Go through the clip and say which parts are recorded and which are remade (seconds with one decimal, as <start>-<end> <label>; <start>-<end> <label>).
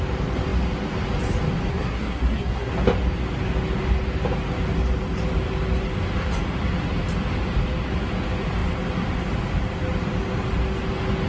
0.0-1.7 recorded; 1.7-2.7 remade; 2.7-11.3 recorded